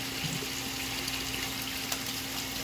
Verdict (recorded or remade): recorded